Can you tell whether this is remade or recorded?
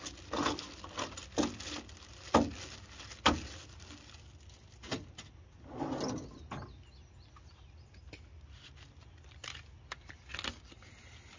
recorded